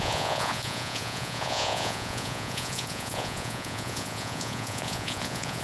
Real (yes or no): no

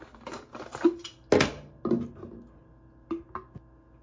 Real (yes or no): yes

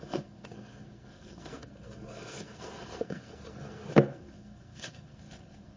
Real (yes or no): no